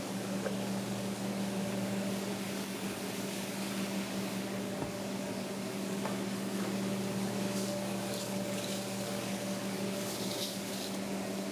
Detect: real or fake fake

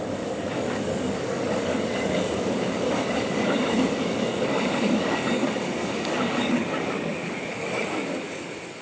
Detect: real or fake fake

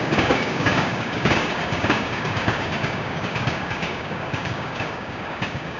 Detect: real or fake fake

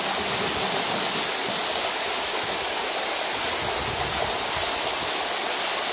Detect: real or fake real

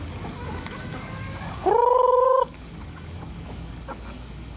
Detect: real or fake fake